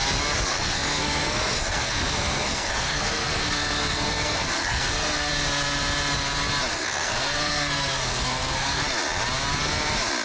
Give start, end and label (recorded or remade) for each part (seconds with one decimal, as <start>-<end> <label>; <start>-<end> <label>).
0.0-0.5 recorded; 0.5-5.3 remade; 5.3-6.7 recorded; 6.7-8.8 remade; 8.8-10.2 recorded

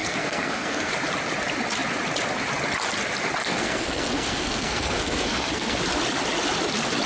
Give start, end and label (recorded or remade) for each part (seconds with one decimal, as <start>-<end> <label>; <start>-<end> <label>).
0.0-0.9 remade; 0.9-3.4 recorded; 3.4-5.8 remade; 5.8-7.1 recorded

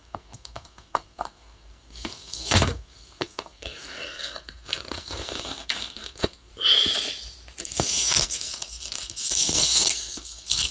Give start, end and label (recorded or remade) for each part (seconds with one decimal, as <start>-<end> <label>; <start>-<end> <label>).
0.0-6.5 remade; 6.5-7.6 recorded; 7.6-10.7 remade

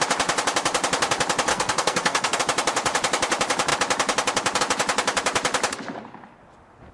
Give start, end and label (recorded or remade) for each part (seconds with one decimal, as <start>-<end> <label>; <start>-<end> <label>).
0.0-1.5 recorded; 1.5-2.4 remade; 2.4-6.9 recorded

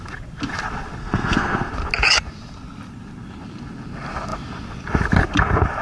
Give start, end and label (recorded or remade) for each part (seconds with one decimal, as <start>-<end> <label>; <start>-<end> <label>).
0.0-1.0 recorded; 1.0-1.7 remade; 1.7-5.8 recorded

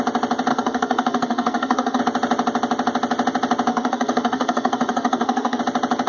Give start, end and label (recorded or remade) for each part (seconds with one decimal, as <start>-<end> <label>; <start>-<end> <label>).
0.0-0.5 recorded; 0.5-2.0 remade; 2.0-3.7 recorded; 3.7-5.6 remade; 5.6-6.1 recorded